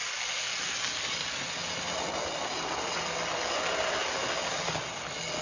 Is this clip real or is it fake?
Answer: real